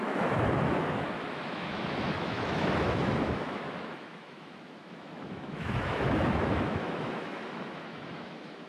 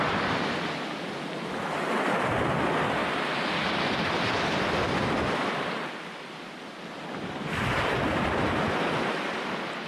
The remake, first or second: first